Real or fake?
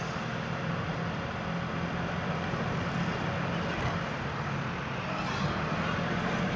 real